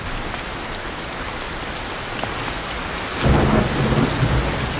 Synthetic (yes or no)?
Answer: no